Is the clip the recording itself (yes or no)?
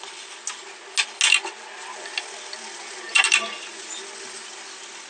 yes